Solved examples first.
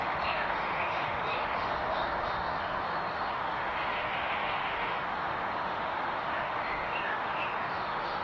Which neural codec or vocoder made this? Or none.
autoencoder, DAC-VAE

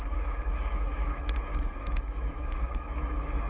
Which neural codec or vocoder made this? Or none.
autoencoder, DAC-VAE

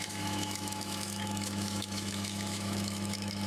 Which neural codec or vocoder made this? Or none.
autoencoder, DAC-VAE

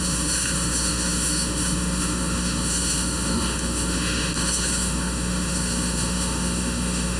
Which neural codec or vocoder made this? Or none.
autoencoder, DAC-VAE